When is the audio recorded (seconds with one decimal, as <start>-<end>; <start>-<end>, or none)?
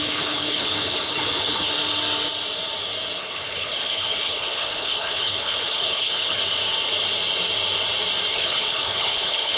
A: 1.7-3.2; 6.4-8.3